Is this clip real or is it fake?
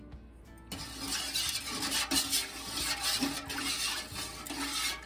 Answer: real